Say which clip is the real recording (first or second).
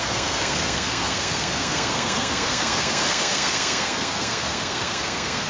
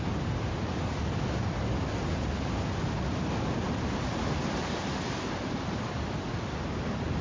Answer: second